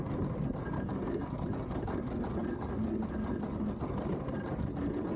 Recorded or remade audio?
recorded